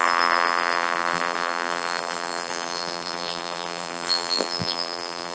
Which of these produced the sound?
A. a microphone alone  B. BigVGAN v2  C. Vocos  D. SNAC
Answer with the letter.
B